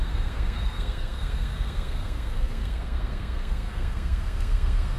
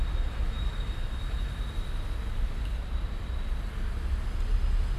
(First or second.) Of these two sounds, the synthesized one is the first